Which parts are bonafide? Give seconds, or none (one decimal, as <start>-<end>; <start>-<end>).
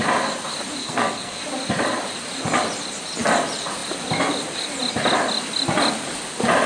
0.0-0.8; 1.4-6.7